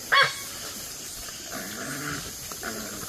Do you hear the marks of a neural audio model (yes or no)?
no